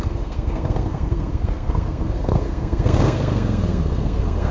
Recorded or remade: remade